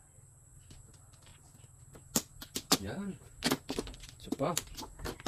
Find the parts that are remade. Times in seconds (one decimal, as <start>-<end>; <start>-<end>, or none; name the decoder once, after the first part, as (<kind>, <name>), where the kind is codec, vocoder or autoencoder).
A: none

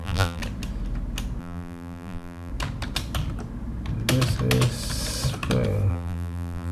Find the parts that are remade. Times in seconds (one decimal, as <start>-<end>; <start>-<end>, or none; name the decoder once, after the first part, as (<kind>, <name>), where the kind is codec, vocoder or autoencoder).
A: 0.0-0.4 (vocoder, BigVGAN v2); 1.4-2.5; 5.9-6.7

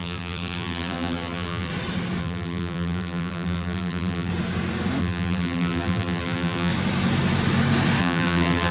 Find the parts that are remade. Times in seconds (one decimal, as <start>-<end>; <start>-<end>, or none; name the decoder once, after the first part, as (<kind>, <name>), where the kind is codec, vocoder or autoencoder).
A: 0.0-1.7 (vocoder, BigVGAN v2); 2.2-4.3; 5.0-6.7; 8.0-8.7

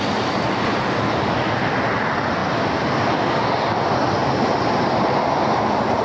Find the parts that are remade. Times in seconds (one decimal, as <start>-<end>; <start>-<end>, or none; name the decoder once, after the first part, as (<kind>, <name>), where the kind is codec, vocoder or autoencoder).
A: none